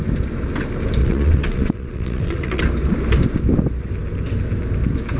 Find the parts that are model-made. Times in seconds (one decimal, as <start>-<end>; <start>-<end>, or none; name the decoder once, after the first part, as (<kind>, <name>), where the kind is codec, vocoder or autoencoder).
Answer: 1.0-2.6 (vocoder, WaveNeXt)